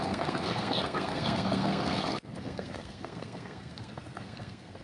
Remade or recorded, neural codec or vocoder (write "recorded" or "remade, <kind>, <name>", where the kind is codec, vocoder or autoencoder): remade, codec, SNAC